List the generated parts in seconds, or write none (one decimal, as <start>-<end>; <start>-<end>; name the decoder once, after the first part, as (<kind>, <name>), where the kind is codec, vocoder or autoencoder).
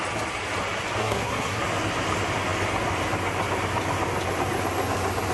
1.0-1.6 (codec, SNAC)